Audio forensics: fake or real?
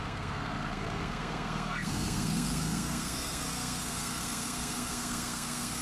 fake